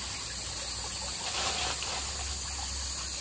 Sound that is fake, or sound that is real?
real